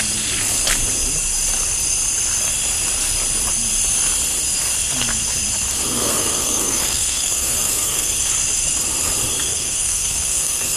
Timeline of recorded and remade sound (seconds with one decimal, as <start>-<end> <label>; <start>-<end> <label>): 0.0-5.9 recorded; 5.9-8.1 remade; 8.1-9.5 recorded; 9.5-10.8 remade

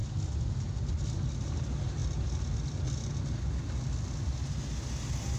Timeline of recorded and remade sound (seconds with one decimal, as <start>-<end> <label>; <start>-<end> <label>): 0.0-5.4 recorded

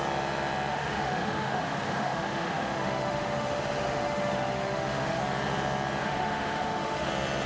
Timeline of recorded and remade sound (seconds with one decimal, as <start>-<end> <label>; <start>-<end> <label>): 0.0-0.7 recorded; 0.7-5.2 remade; 5.2-6.0 recorded; 6.0-7.1 remade; 7.1-7.5 recorded